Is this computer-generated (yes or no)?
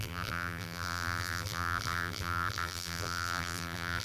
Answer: yes